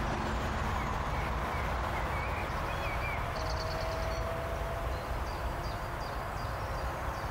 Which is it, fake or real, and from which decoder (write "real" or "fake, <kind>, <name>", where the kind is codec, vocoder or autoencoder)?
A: real